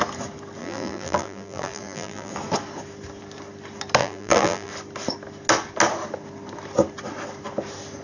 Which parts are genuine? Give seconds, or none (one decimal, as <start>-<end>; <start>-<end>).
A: 0.0-0.6; 2.3-4.0; 4.7-8.0